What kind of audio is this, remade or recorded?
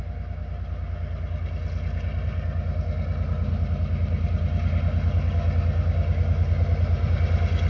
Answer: recorded